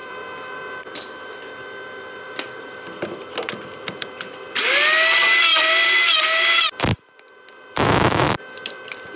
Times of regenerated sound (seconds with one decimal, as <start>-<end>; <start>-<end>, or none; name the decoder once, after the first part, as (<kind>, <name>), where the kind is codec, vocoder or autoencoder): 0.0-4.6 (vocoder, BigVGAN v2); 5.5-9.2